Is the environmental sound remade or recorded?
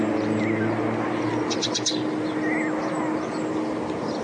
recorded